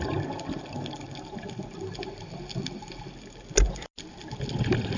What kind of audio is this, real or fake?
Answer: real